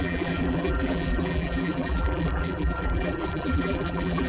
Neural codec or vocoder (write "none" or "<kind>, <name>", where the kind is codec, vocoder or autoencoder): vocoder, BigVGAN v2